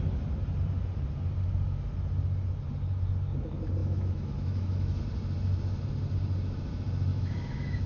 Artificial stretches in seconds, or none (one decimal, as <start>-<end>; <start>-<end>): 3.8-5.0; 7.1-7.9